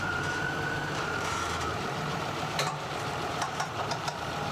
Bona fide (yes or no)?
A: no